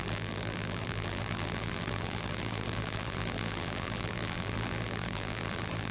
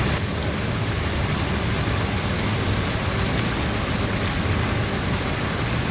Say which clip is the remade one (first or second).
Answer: first